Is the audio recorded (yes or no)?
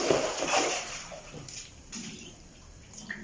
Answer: no